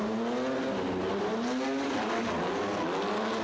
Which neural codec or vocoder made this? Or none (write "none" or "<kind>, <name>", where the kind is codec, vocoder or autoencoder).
none